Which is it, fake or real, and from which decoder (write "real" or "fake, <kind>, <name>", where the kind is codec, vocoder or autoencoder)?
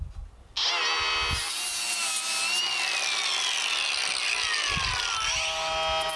real